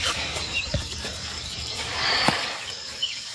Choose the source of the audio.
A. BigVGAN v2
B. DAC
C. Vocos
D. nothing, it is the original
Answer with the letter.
B